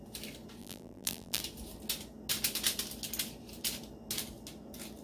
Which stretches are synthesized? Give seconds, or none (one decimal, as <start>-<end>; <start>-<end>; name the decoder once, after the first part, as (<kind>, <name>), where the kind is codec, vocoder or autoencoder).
0.6-1.4 (vocoder, BigVGAN v2)